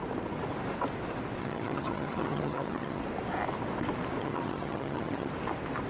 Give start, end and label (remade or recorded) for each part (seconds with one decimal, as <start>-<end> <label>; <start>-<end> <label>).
0.0-1.4 recorded; 1.4-3.0 remade; 3.0-4.2 recorded; 4.2-5.3 remade; 5.3-5.9 recorded